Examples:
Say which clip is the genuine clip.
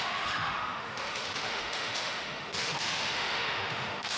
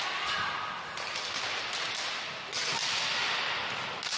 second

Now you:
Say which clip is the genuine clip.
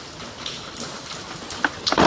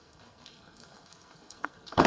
first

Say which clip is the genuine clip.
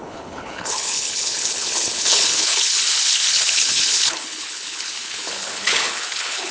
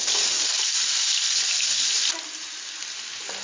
second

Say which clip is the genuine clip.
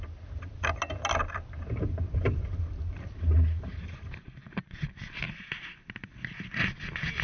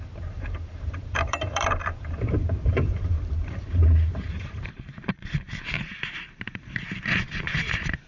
first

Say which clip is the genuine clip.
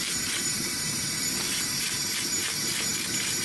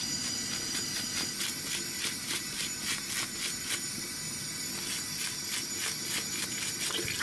second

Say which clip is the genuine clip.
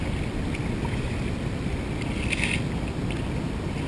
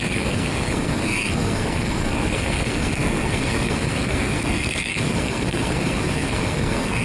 first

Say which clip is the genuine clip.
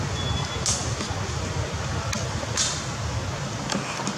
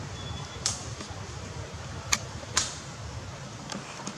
first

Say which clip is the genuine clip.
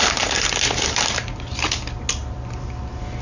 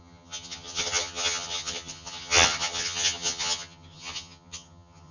first